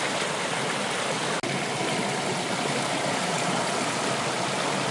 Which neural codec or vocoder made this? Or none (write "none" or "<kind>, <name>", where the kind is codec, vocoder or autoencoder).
none